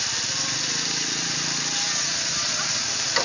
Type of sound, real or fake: fake